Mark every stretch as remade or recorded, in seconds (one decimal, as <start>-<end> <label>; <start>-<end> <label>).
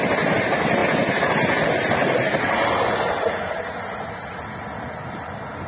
0.0-5.7 recorded